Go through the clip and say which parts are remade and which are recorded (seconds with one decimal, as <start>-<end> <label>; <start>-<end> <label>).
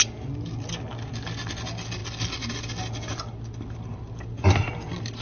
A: 0.0-5.2 recorded